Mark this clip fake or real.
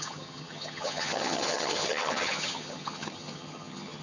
fake